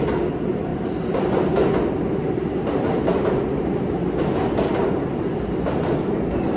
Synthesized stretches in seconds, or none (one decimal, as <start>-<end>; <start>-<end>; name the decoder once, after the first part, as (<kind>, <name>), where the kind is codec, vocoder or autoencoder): none